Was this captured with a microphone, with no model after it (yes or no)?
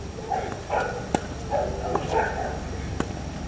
yes